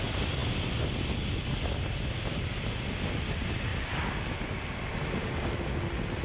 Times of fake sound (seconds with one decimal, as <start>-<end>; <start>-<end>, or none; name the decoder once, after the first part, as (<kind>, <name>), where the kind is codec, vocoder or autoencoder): none